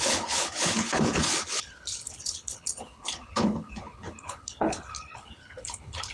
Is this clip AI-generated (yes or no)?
yes